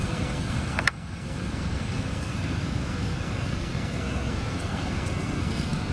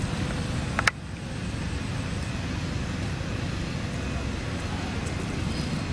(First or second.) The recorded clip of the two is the second